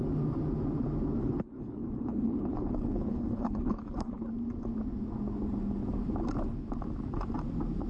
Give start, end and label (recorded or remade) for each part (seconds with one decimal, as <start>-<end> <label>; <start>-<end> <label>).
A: 0.0-1.2 recorded; 1.2-4.2 remade; 4.2-7.9 recorded